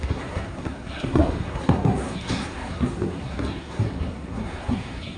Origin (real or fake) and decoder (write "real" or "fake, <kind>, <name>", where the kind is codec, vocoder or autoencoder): fake, codec, SNAC